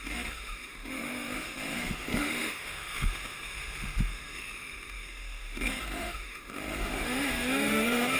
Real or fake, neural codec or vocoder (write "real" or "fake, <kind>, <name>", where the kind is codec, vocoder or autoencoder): fake, autoencoder, DAC-VAE